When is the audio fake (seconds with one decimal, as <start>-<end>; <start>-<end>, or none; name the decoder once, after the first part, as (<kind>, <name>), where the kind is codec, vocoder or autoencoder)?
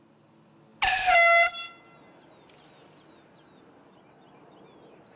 none